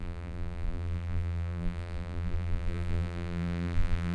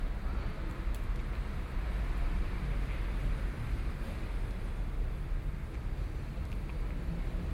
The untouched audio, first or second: second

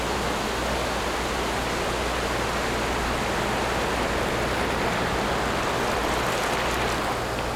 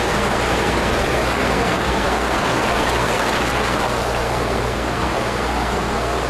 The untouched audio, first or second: first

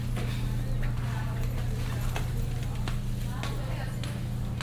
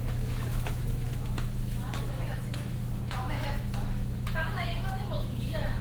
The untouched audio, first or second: first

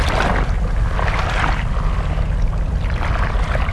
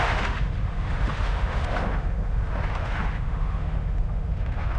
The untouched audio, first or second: first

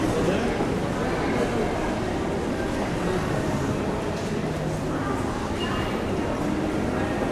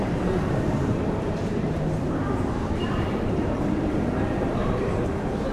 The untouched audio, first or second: first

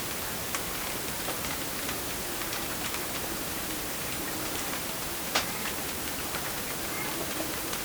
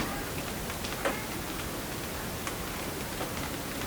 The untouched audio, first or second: second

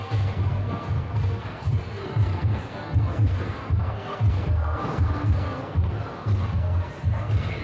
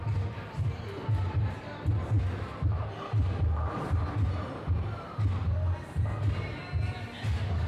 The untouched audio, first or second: second